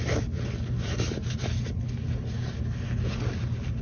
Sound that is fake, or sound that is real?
real